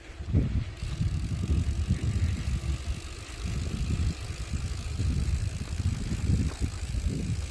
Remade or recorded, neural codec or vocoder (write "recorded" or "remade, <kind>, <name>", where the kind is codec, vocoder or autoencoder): recorded